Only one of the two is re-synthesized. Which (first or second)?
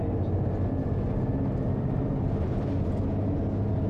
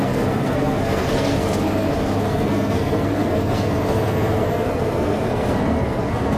second